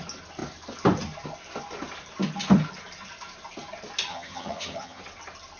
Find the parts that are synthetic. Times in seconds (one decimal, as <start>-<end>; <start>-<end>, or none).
4.1-5.0